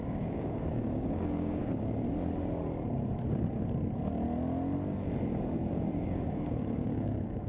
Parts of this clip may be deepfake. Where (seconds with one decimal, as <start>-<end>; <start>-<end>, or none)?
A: 0.0-1.6; 5.7-7.5